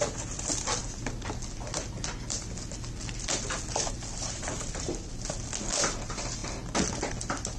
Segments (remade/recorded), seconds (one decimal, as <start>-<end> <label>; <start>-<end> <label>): 0.0-7.6 recorded